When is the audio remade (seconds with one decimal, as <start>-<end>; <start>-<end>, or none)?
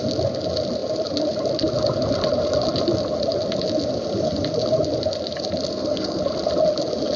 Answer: 5.7-6.2